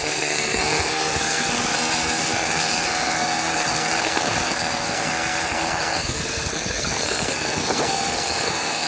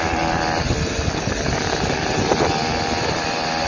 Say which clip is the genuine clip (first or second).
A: second